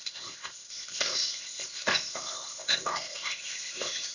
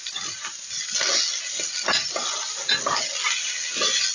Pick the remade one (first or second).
first